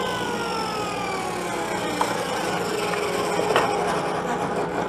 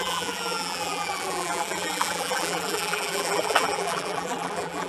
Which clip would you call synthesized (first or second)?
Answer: second